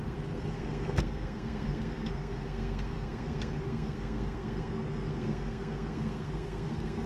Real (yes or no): no